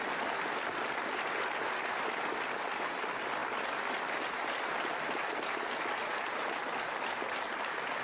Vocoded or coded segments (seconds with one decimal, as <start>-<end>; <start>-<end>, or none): none